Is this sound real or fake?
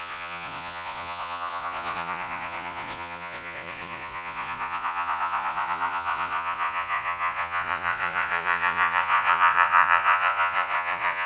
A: fake